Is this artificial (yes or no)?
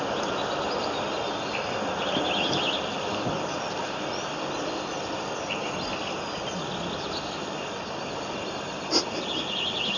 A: no